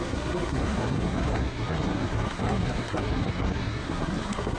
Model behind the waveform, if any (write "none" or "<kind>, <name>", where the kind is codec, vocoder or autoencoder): codec, SNAC